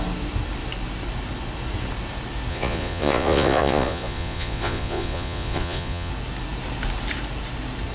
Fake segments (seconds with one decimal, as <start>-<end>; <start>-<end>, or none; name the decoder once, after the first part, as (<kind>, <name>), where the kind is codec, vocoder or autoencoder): 2.5-6.1 (vocoder, Vocos)